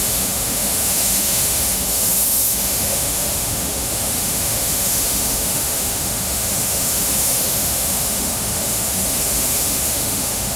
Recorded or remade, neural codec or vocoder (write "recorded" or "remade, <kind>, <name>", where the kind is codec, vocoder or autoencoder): remade, autoencoder, DAC-VAE